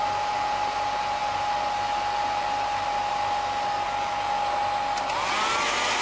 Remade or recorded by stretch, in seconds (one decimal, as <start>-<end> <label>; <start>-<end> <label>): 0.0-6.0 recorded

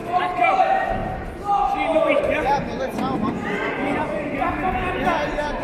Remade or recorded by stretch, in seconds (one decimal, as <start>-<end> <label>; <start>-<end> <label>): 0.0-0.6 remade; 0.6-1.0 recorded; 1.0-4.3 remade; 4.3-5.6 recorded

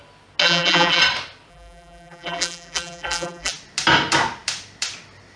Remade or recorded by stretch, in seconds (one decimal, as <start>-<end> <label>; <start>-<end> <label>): 0.0-0.4 recorded; 0.4-1.0 remade; 1.0-1.5 recorded; 1.5-3.5 remade; 3.5-5.4 recorded

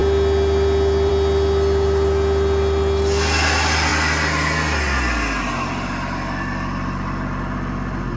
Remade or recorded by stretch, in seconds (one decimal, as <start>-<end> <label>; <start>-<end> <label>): 0.0-8.2 recorded

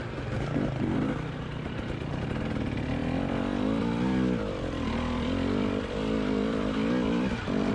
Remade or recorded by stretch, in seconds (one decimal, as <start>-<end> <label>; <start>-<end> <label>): 0.0-3.0 recorded; 3.0-7.7 remade

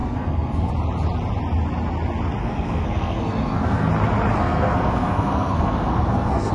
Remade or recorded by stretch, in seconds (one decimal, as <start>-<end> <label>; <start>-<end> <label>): 0.0-0.7 remade; 0.7-2.4 recorded; 2.4-3.9 remade; 3.9-4.4 recorded; 4.4-6.5 remade